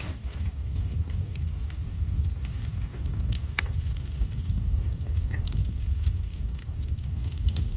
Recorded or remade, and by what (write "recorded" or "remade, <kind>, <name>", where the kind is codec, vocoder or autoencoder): remade, codec, DAC